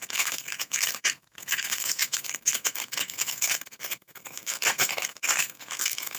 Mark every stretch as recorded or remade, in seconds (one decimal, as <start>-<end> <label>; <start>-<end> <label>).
0.0-6.2 remade